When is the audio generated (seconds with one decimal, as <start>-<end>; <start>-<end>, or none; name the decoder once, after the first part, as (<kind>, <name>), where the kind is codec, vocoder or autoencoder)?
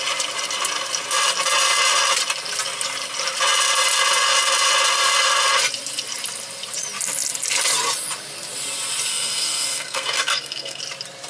9.1-10.8 (codec, SNAC)